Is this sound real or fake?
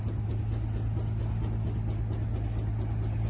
real